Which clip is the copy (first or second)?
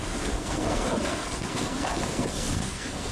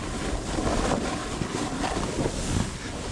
first